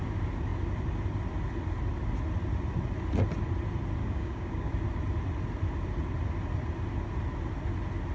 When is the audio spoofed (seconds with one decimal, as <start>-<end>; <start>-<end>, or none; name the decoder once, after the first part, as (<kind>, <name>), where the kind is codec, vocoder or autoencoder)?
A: 4.0-4.7 (codec, DAC)